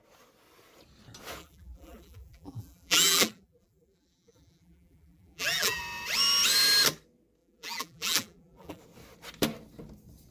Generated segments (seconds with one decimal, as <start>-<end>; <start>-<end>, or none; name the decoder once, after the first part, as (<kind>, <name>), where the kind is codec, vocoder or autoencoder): 1.4-5.8 (vocoder, BigVGAN v2); 7.4-8.8